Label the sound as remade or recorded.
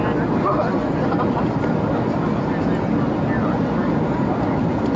recorded